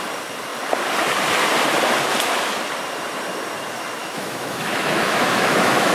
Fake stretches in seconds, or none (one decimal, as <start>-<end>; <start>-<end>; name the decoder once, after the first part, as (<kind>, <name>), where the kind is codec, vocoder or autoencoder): 4.0-5.9 (autoencoder, DAC-VAE)